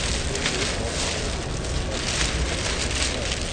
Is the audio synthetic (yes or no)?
no